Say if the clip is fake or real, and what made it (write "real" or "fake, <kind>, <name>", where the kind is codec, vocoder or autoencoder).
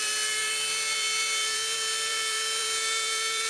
fake, vocoder, BigVGAN v2